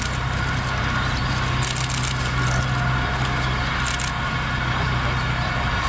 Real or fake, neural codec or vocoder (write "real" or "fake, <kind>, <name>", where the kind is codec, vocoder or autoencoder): real